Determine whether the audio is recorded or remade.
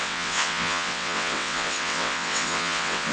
remade